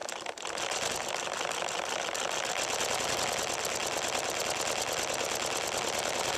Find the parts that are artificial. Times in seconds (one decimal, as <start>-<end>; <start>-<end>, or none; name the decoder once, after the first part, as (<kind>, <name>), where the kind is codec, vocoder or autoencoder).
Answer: 0.0-2.0 (vocoder, BigVGAN v2)